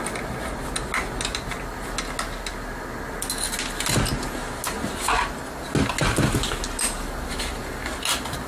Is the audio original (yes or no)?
yes